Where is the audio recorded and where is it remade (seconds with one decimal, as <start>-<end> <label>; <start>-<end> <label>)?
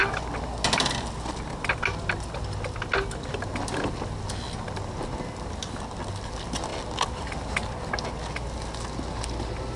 0.0-9.8 recorded